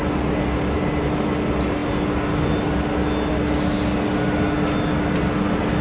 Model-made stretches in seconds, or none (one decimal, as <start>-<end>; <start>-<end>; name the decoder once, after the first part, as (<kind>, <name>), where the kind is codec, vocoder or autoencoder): none